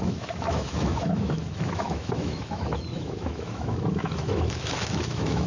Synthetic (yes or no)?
yes